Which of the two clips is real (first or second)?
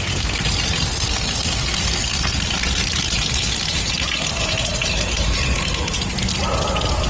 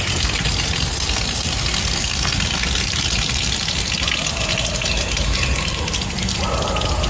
first